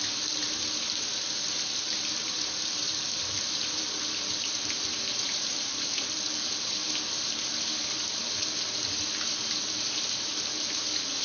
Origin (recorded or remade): remade